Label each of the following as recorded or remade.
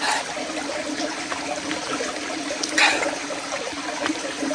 recorded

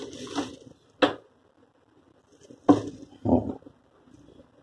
recorded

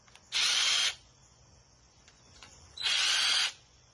remade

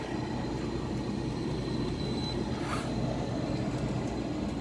recorded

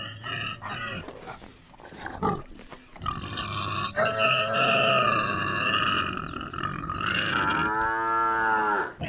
recorded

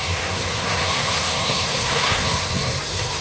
remade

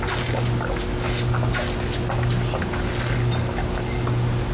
recorded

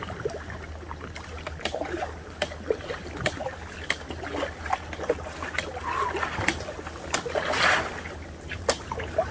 recorded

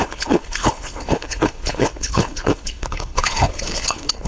remade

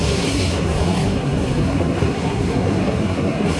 remade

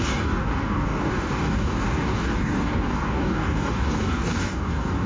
remade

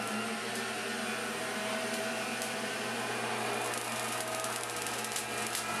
recorded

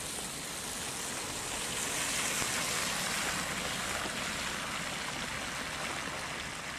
recorded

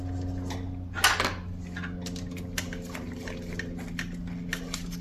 recorded